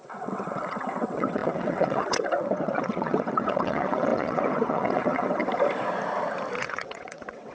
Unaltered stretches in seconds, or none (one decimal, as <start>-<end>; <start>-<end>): 5.4-6.6